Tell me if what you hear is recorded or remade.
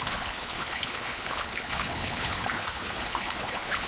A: remade